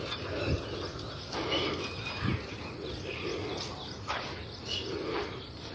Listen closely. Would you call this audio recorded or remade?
recorded